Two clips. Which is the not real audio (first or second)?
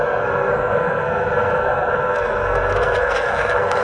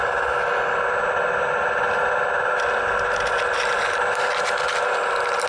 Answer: first